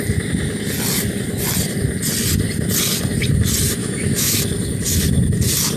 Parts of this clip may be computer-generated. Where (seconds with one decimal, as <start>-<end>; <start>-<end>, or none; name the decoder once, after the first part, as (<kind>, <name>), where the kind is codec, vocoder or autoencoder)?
3.8-4.4 (autoencoder, DAC-VAE)